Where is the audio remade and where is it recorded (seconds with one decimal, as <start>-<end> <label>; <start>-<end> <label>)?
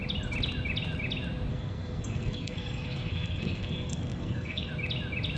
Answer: 0.0-1.5 recorded; 1.5-4.7 remade; 4.7-5.4 recorded